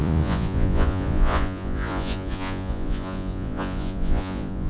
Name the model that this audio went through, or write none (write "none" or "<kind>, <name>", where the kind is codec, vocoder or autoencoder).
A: vocoder, Vocos